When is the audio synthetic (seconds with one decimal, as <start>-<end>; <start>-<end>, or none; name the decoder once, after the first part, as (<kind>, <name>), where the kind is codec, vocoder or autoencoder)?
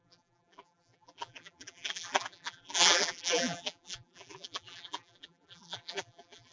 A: 0.0-6.5 (vocoder, BigVGAN v2)